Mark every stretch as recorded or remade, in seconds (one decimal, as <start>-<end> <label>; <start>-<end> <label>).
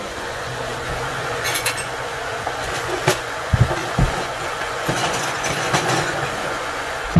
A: 0.0-7.2 remade